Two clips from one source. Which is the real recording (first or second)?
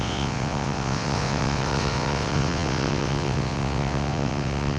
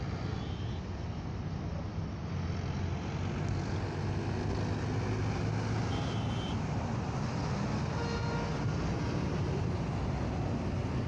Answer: second